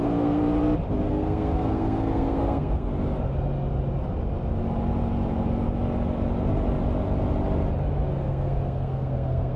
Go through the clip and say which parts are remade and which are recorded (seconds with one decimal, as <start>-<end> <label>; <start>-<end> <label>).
0.0-0.4 remade; 0.4-1.0 recorded; 1.0-2.9 remade; 2.9-8.1 recorded; 8.1-9.6 remade